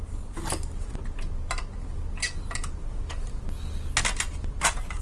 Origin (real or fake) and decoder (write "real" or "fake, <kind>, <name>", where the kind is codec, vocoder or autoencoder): real